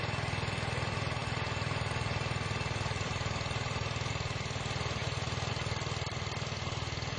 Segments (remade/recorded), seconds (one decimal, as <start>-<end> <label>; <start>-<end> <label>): 0.0-1.2 recorded; 1.2-4.1 remade; 4.1-7.2 recorded